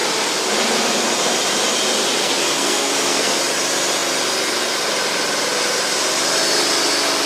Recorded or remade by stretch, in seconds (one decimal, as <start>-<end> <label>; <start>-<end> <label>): 0.0-2.2 recorded; 2.2-3.4 remade; 3.4-7.3 recorded